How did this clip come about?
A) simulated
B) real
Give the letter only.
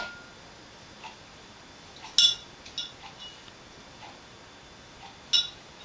B